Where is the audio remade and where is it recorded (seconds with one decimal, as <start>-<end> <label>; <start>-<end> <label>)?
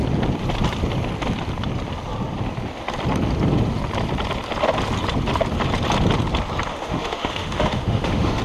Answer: 0.0-6.7 recorded; 6.7-8.4 remade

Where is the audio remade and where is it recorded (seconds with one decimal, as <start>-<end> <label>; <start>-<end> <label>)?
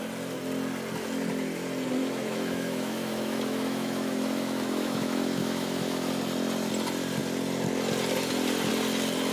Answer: 0.0-2.0 recorded; 2.0-6.1 remade; 6.1-9.3 recorded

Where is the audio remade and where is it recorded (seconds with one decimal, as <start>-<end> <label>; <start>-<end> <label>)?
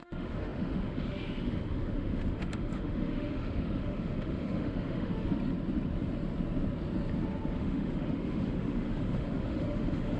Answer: 0.0-5.1 remade; 5.1-7.6 recorded; 7.6-10.2 remade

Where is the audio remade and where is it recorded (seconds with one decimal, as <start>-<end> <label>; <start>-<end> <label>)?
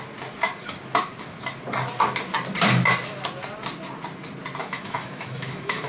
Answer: 0.0-4.6 recorded; 4.6-5.9 remade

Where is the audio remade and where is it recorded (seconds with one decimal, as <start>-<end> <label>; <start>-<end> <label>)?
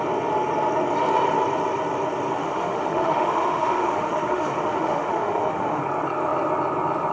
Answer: 0.0-2.4 recorded; 2.4-5.8 remade; 5.8-7.1 recorded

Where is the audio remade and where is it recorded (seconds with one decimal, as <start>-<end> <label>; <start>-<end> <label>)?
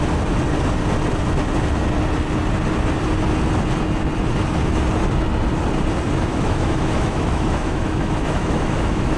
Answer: 0.0-6.3 recorded; 6.3-9.2 remade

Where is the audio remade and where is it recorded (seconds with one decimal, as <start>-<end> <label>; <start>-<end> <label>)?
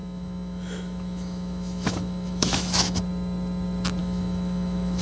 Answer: 0.0-3.0 remade; 3.0-4.0 recorded; 4.0-5.0 remade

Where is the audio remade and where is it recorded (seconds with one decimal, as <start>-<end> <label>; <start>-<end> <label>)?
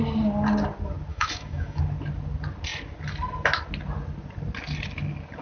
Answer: 0.0-1.1 recorded; 1.1-1.8 remade; 1.8-5.4 recorded